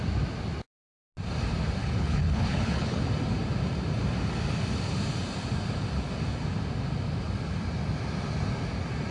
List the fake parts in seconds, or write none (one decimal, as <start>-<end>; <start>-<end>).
1.8-3.0

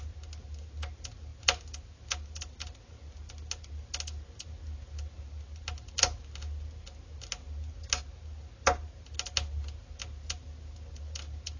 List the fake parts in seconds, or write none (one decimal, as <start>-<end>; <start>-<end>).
none

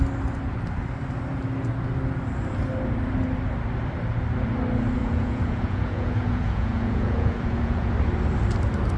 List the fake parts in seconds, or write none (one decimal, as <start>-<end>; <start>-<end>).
5.0-7.9

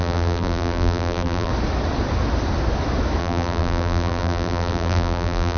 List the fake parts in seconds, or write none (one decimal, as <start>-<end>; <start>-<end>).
0.0-1.5; 3.2-5.6